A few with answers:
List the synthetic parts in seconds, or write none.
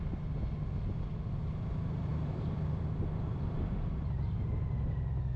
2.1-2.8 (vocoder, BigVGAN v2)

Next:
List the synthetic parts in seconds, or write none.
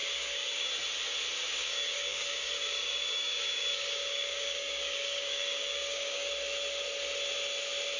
0.0-0.7 (codec, DAC); 1.5-6.3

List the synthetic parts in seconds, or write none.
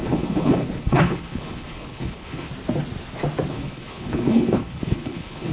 0.0-2.5 (codec, HILCodec); 3.5-5.5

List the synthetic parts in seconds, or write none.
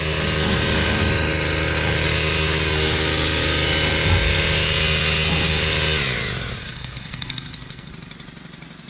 6.6-7.9 (codec, SNAC)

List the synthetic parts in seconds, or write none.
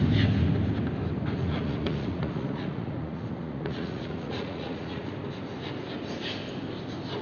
1.4-5.1 (vocoder, Vocos)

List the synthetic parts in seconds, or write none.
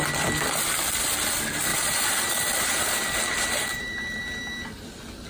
1.7-4.2 (vocoder, BigVGAN v2)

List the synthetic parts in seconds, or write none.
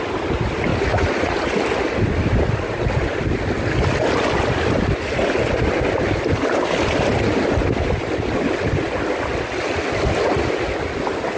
0.7-1.4 (vocoder, Vocos)